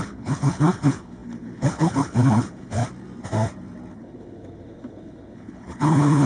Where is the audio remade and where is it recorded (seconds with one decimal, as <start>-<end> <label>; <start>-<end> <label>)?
0.0-2.8 remade; 2.8-3.9 recorded; 3.9-6.3 remade